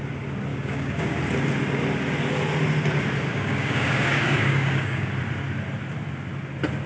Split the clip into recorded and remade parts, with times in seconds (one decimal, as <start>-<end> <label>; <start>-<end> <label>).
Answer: 0.0-0.5 recorded; 0.5-1.2 remade; 1.2-3.3 recorded; 3.3-5.1 remade; 5.1-6.9 recorded